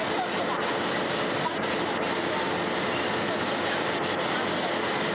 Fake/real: real